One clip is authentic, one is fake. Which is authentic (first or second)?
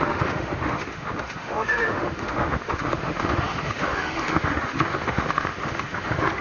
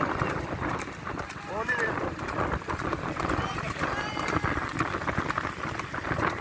second